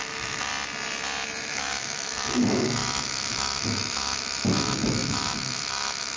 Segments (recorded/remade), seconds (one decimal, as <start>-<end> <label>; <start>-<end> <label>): 0.0-0.5 remade; 0.5-1.4 recorded; 1.4-6.2 remade